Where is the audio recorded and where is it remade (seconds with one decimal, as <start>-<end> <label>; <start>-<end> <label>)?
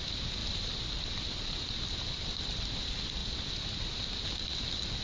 0.0-5.0 recorded